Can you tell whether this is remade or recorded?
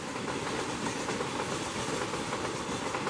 recorded